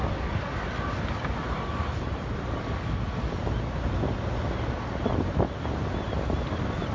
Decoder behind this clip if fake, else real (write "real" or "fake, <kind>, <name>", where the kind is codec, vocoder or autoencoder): real